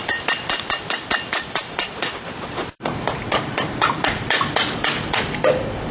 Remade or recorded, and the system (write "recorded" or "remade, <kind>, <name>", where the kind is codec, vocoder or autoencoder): remade, vocoder, BigVGAN v2